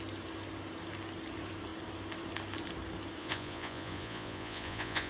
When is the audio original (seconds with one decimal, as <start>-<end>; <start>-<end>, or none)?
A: 0.0-3.2